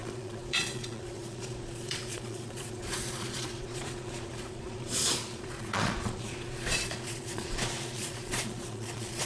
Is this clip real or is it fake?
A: fake